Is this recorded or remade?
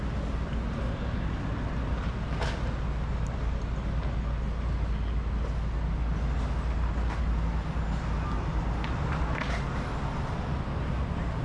recorded